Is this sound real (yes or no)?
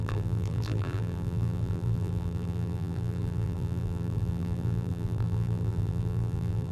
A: no